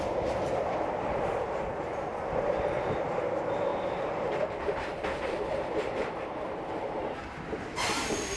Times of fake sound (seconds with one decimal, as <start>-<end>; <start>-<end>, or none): 3.7-7.3